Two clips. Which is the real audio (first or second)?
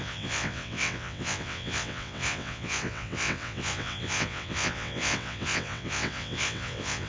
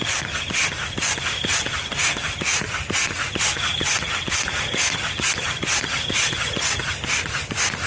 second